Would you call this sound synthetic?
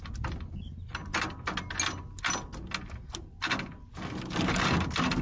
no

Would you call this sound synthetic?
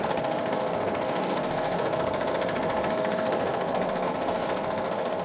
yes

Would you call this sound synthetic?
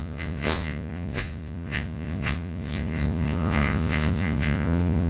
yes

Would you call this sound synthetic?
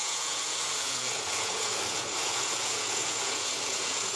yes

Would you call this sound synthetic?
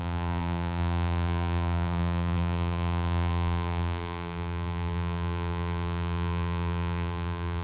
yes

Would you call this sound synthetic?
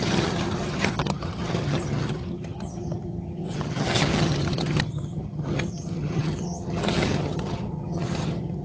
yes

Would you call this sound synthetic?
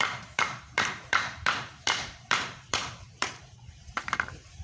yes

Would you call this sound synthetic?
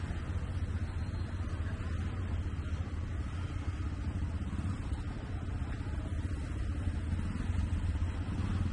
no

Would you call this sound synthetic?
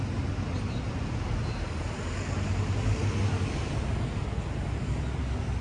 no